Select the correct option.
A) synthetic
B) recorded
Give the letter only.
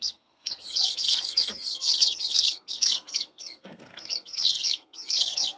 A